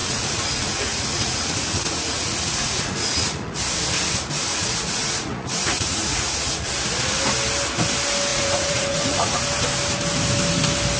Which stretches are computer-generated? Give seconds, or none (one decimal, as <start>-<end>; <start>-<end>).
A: 0.0-3.6; 4.5-6.7; 8.3-9.4